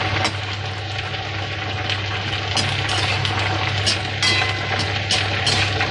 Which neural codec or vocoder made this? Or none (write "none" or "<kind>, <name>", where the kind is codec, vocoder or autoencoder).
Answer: none